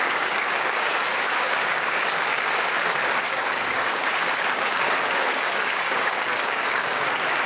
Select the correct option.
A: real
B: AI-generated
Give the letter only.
B